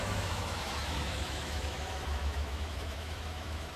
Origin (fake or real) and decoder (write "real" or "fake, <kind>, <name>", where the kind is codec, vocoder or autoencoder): fake, autoencoder, DAC-VAE